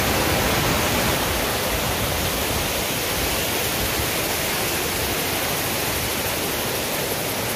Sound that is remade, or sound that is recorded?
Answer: recorded